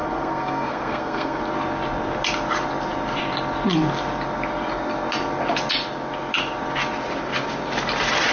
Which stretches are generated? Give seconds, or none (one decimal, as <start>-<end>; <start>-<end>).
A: 0.0-1.4